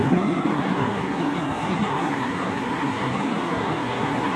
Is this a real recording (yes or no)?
no